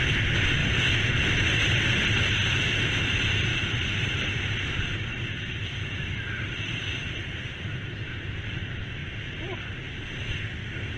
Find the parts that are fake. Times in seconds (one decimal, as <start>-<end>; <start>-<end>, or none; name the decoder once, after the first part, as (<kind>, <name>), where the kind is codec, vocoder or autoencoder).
3.5-8.6 (vocoder, BigVGAN v2); 9.0-9.7